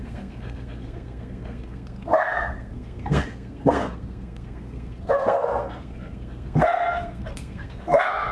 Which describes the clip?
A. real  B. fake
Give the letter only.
B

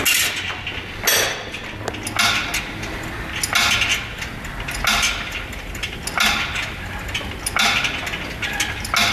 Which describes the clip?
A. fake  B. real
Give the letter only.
B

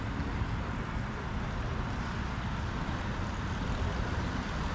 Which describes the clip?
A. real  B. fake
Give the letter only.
A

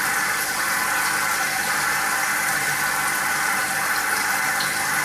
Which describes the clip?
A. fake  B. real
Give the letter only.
B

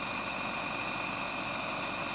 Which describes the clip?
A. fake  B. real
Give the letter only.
B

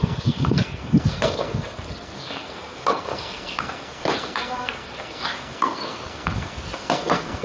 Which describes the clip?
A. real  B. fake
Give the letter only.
B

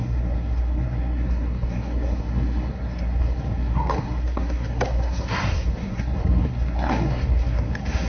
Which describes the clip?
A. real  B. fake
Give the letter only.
B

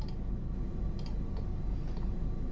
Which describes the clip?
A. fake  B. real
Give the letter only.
B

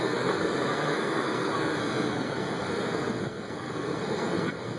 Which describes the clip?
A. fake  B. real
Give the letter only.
A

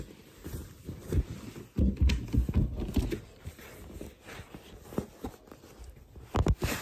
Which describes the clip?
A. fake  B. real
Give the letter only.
B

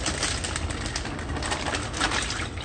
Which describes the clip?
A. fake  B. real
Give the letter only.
B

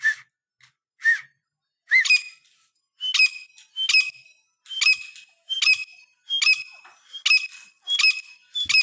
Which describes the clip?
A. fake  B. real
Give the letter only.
B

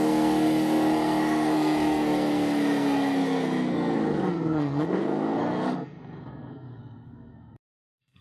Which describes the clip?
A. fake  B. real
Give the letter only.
A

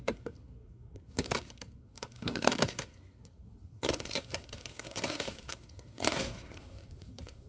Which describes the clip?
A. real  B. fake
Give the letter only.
B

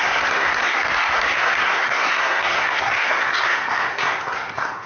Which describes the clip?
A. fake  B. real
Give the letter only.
A